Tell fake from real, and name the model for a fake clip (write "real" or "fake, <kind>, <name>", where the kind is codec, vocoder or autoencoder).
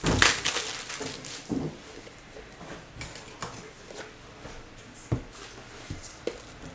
real